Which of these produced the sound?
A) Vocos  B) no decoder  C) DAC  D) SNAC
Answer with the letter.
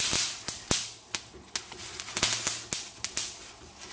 B